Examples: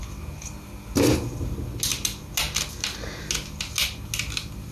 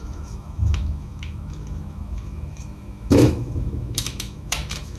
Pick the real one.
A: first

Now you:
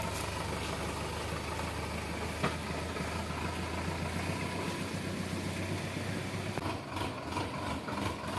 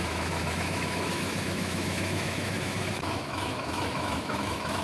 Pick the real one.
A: first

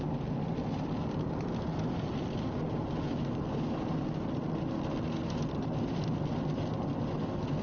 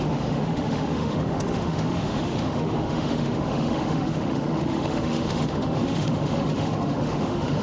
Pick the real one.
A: first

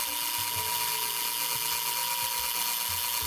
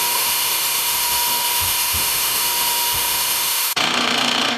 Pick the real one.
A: first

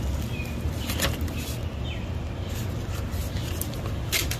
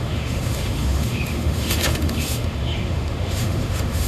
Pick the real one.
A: first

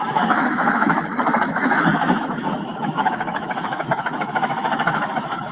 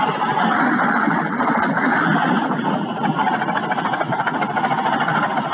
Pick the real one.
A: second